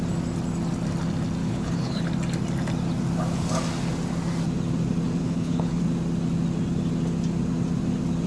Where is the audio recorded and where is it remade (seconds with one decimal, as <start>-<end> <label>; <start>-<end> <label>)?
0.0-1.4 recorded; 1.4-2.0 remade; 2.0-5.2 recorded; 5.2-5.8 remade; 5.8-8.3 recorded